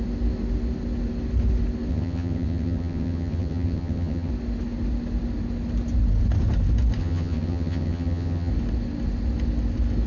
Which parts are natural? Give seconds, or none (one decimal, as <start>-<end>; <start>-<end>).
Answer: 0.0-1.9; 4.3-7.0; 8.5-10.1